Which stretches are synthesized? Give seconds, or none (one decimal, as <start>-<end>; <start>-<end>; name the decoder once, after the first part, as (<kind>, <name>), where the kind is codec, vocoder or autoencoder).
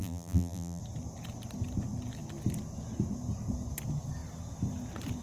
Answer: 0.0-0.8 (vocoder, BigVGAN v2)